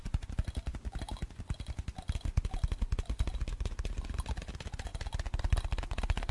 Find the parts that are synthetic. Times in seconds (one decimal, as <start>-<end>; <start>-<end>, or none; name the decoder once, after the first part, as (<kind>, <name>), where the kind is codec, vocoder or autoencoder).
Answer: none